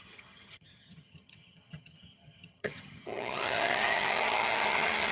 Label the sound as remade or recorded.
remade